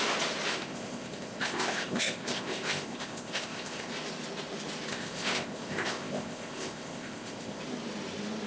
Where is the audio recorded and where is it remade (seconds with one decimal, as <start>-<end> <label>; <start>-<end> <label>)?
0.0-0.5 recorded; 0.5-3.9 remade; 3.9-4.9 recorded; 4.9-7.6 remade; 7.6-8.5 recorded